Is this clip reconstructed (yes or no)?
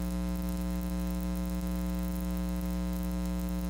no